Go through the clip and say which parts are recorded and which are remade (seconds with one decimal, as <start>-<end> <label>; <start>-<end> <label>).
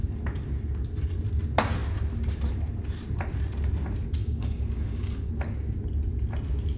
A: 0.0-4.2 recorded; 4.2-5.3 remade; 5.3-6.8 recorded